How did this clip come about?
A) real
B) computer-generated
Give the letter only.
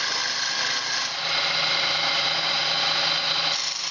A